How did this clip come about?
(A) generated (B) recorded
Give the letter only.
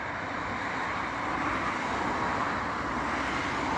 B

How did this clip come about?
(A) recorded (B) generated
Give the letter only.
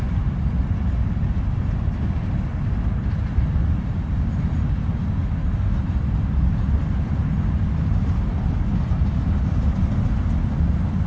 A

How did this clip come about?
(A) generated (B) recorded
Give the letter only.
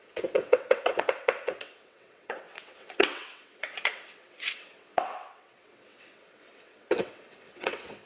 A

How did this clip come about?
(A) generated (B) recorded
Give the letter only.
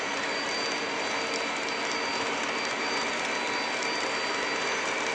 B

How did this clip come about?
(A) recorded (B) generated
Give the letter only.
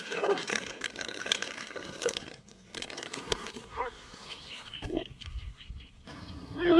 B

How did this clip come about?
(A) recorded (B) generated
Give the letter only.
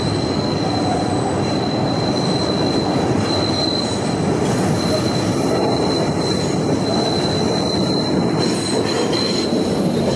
A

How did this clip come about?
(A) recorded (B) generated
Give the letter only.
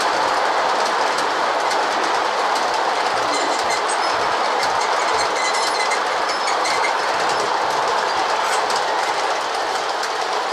A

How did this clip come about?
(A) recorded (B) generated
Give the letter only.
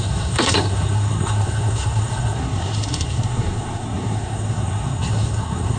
B